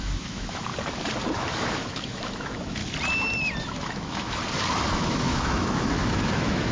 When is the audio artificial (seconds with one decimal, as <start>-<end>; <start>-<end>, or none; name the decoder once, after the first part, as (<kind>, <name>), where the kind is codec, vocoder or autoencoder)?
0.0-0.7 (autoencoder, DAC-VAE); 1.3-2.8; 3.6-4.4; 4.9-6.7